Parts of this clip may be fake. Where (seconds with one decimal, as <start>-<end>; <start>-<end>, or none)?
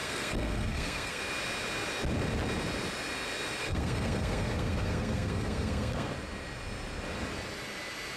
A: 0.0-1.2; 3.6-6.1